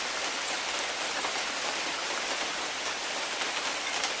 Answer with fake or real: real